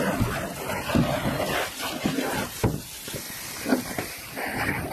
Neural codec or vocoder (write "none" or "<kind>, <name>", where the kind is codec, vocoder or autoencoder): none